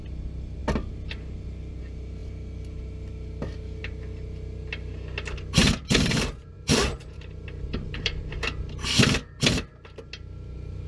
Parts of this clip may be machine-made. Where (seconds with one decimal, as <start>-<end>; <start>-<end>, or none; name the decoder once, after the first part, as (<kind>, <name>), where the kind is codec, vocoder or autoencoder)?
5.6-8.2 (vocoder, BigVGAN v2)